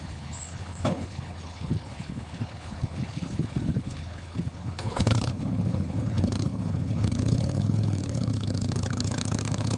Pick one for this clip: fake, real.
fake